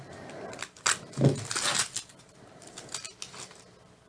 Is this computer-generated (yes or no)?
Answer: no